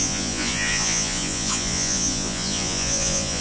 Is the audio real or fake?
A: fake